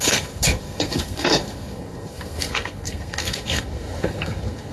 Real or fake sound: fake